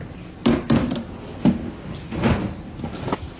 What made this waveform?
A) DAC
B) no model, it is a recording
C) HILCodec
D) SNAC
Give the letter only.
B